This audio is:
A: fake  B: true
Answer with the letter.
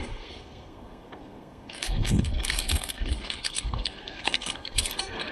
A